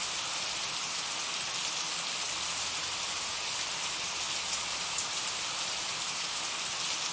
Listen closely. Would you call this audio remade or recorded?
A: recorded